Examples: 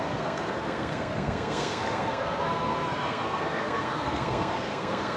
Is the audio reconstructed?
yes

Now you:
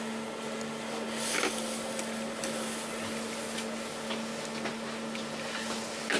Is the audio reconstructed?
no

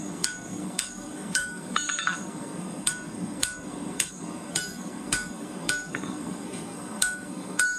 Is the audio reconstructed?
yes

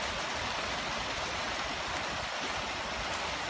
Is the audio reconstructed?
no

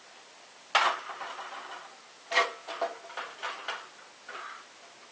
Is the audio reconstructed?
no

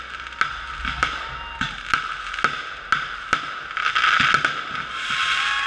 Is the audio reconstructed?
no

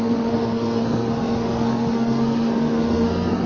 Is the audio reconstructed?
yes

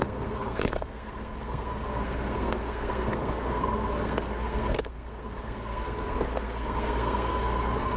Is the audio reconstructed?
yes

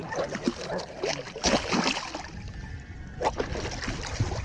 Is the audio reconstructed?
no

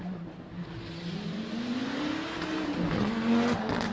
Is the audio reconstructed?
no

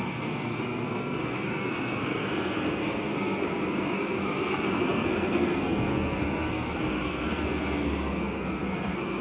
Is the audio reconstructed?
yes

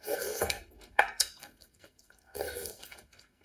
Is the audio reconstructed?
yes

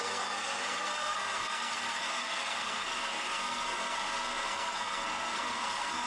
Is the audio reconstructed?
yes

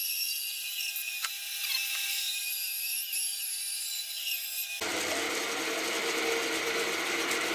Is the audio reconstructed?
no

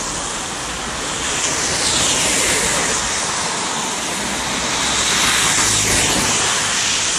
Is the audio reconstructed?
no